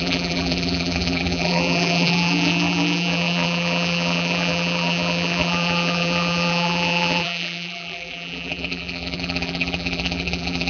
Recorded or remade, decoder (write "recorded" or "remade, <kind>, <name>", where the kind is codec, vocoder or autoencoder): remade, vocoder, BigVGAN v2